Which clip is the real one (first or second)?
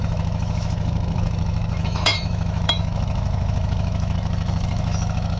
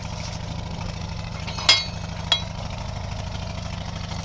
second